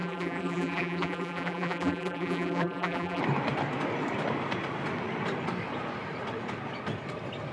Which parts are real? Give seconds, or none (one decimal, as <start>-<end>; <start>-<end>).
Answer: 3.2-7.5